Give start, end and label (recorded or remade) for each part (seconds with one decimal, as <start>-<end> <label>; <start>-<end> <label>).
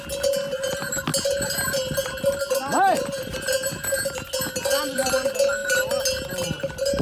0.0-7.0 recorded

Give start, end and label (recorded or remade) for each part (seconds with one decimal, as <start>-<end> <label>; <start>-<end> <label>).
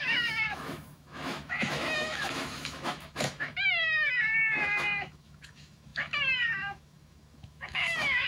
0.0-8.3 remade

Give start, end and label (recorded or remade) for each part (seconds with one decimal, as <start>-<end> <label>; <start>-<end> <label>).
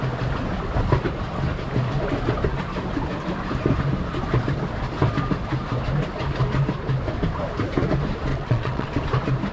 0.0-8.3 recorded; 8.3-8.9 remade; 8.9-9.5 recorded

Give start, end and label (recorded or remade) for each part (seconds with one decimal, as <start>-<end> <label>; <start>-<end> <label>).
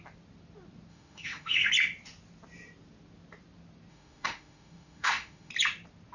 0.0-0.9 recorded; 0.9-1.7 remade; 1.7-3.9 recorded; 3.9-5.5 remade; 5.5-6.1 recorded